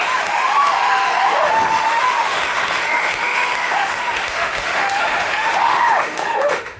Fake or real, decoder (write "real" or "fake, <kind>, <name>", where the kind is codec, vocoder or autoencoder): fake, autoencoder, DAC-VAE